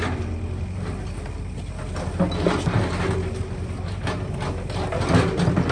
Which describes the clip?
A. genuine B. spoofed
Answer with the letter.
A